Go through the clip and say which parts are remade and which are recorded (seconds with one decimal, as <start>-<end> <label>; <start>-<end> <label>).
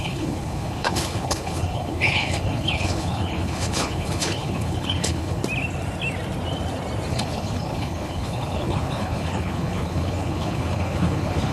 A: 0.0-5.4 remade; 5.4-7.1 recorded; 7.1-11.5 remade